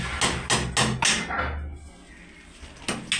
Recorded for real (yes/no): yes